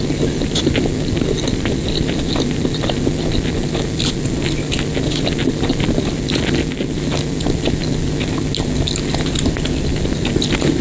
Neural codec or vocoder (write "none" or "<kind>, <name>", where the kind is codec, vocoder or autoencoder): none